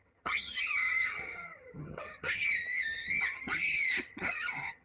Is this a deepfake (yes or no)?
yes